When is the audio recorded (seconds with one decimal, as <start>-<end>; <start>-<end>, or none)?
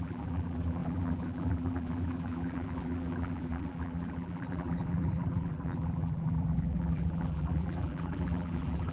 none